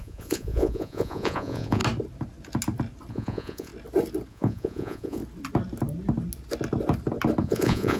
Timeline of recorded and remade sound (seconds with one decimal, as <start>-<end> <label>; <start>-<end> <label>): 0.0-1.8 remade; 1.8-3.1 recorded; 3.1-3.7 remade; 3.7-4.3 recorded; 4.3-5.2 remade; 5.2-7.4 recorded; 7.4-8.0 remade